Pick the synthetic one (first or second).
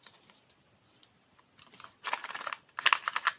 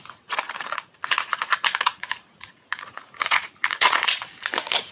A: second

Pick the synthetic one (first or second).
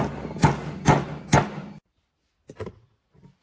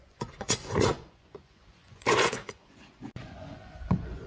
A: second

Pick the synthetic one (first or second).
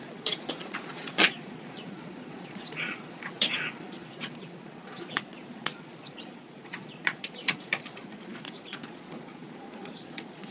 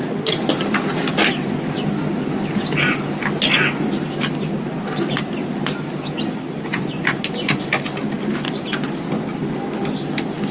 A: first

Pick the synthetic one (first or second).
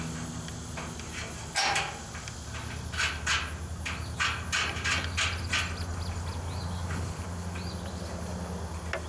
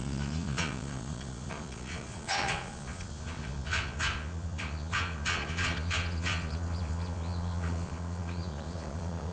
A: second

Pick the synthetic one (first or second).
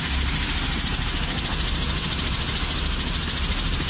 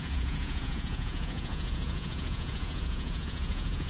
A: second